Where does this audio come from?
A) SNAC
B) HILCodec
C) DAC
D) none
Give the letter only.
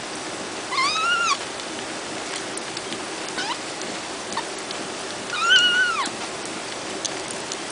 D